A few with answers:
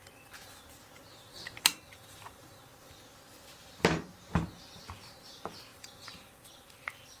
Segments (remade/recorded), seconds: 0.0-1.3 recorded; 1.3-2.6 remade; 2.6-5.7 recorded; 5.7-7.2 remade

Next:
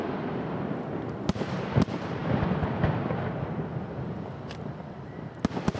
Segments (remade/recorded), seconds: 0.0-5.8 recorded

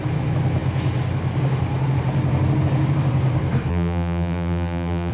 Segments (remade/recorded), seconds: 0.0-3.7 recorded; 3.7-5.1 remade

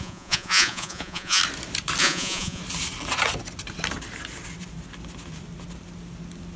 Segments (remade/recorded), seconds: 0.0-1.4 remade; 1.4-2.0 recorded; 2.0-2.6 remade; 2.6-6.6 recorded

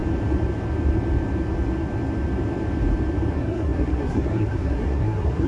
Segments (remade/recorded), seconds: 0.0-3.3 recorded; 3.3-5.5 remade

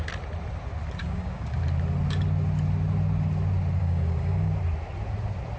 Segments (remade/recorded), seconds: 0.0-1.0 recorded; 1.0-1.6 remade; 1.6-3.8 recorded; 3.8-4.5 remade; 4.5-5.6 recorded

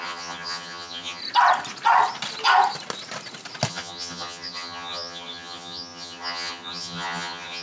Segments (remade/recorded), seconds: 0.0-1.2 remade; 1.2-3.7 recorded; 3.7-7.6 remade